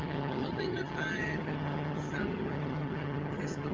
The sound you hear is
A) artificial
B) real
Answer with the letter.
A